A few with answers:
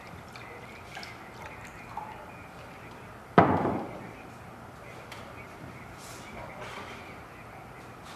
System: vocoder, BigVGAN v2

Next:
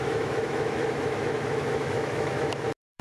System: autoencoder, DAC-VAE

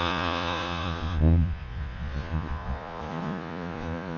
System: vocoder, Vocos